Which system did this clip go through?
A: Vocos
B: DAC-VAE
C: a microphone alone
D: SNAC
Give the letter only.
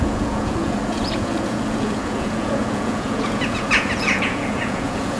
A